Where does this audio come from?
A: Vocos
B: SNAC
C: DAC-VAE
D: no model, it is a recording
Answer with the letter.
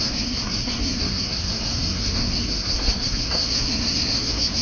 B